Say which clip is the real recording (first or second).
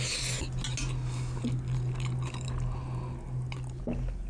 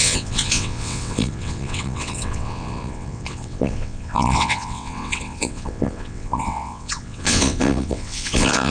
first